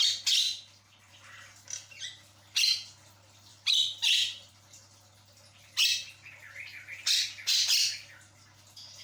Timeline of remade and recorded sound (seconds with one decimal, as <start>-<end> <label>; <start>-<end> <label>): 0.0-3.5 recorded; 3.5-4.5 remade; 4.5-9.0 recorded